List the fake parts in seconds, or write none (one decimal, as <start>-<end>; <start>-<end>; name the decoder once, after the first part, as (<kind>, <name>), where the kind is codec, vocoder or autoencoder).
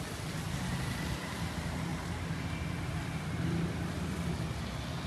none